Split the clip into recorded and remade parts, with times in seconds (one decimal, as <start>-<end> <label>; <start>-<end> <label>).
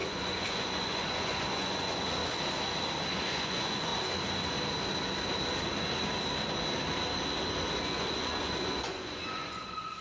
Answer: 0.0-2.2 remade; 2.2-3.1 recorded; 3.1-3.9 remade; 3.9-7.8 recorded; 7.8-10.0 remade